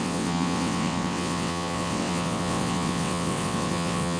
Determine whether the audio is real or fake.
fake